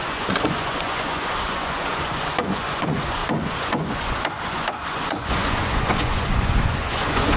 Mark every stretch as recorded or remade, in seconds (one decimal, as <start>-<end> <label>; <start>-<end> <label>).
0.0-7.4 remade